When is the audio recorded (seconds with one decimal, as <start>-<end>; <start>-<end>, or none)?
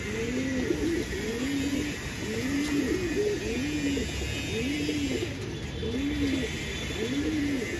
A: 0.0-7.8